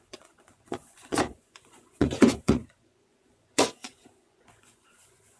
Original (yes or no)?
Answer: no